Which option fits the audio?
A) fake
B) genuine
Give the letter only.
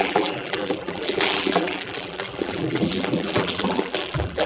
A